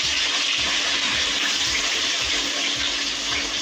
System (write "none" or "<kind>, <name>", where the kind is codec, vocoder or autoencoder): none